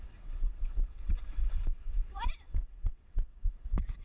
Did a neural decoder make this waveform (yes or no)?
yes